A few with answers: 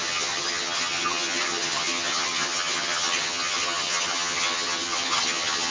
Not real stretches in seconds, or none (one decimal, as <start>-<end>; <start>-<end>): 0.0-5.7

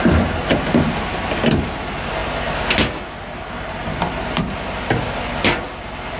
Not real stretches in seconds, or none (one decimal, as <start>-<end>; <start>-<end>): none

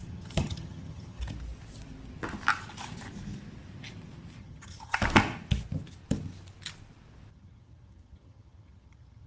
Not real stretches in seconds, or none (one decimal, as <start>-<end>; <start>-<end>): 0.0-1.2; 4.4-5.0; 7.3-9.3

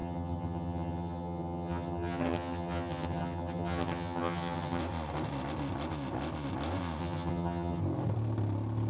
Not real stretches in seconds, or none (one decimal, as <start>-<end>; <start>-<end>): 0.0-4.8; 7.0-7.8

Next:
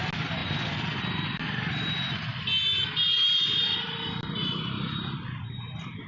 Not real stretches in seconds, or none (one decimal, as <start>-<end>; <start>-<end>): none

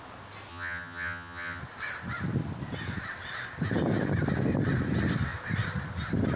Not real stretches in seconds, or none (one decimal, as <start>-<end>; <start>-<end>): 0.5-1.6